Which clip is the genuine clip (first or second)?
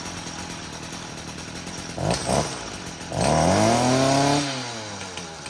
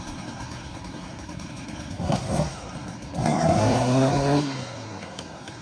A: first